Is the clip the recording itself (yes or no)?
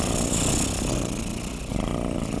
yes